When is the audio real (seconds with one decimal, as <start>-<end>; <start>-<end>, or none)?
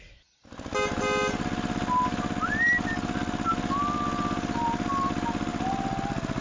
0.0-6.4